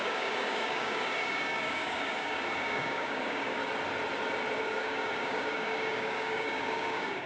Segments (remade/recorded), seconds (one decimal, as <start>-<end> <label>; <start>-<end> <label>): 0.0-3.6 remade; 3.6-4.6 recorded; 4.6-7.3 remade